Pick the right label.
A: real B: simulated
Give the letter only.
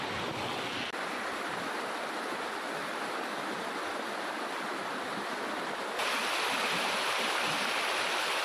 A